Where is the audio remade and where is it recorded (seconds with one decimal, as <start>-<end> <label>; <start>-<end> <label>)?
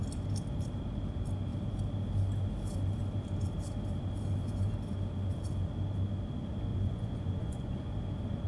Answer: 0.0-6.7 recorded; 6.7-7.9 remade; 7.9-8.5 recorded